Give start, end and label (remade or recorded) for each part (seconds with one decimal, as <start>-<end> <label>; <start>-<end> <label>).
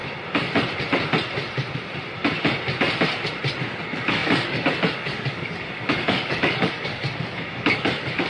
0.0-3.7 recorded; 3.7-8.3 remade